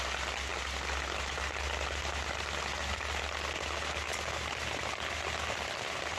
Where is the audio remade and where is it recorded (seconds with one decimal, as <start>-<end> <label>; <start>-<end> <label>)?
0.0-6.2 recorded